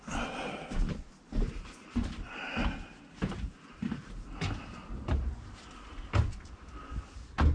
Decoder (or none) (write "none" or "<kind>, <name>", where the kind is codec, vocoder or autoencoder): none